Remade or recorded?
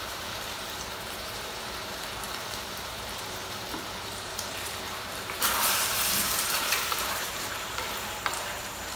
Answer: remade